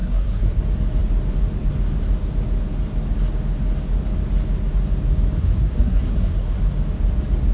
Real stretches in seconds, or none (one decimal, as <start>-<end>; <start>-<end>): 0.6-5.4; 6.6-7.5

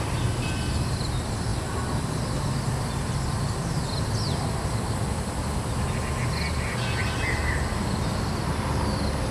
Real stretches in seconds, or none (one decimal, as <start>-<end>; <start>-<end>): 0.0-9.3